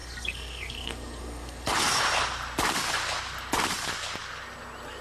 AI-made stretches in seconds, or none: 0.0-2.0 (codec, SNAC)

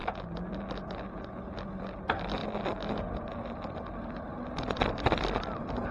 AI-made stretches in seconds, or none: none